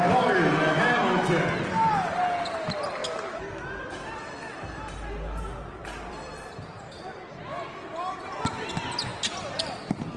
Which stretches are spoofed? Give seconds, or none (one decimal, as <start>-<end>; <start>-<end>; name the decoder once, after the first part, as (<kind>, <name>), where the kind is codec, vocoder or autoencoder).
5.8-7.0 (vocoder, BigVGAN v2); 9.1-10.2